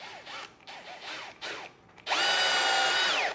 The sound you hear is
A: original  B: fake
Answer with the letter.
A